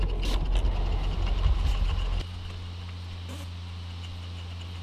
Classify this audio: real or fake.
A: real